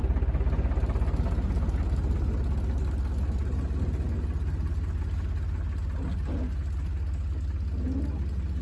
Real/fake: real